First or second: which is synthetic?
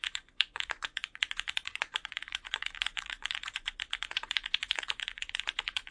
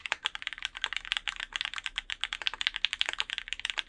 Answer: first